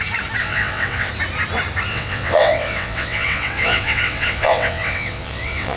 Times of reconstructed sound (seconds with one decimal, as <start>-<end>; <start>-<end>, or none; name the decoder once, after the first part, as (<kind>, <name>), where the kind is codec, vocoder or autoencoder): 0.4-1.1 (vocoder, WaveNeXt); 1.9-5.8